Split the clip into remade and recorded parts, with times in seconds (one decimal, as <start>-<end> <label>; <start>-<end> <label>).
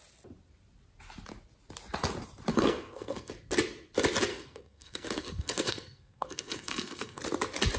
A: 0.0-2.5 recorded; 2.5-3.3 remade; 3.3-4.3 recorded; 4.3-7.2 remade; 7.2-7.8 recorded